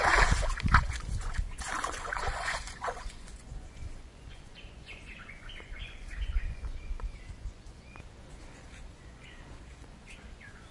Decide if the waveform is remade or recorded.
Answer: remade